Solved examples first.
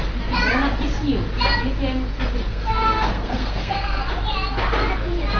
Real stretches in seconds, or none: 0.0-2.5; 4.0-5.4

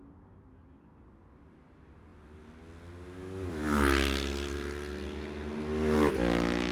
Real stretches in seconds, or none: 0.0-6.7

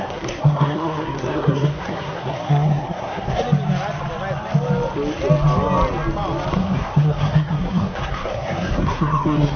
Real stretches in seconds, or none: 3.4-6.5

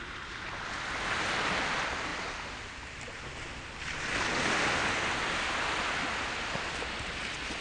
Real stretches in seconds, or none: 0.0-7.6

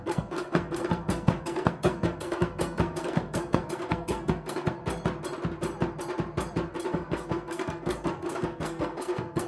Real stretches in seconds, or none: 4.8-6.9

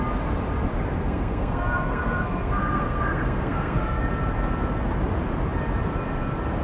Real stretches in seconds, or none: 0.0-1.0; 4.0-6.6